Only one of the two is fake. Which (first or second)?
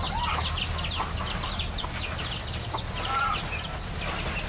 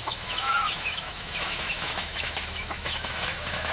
second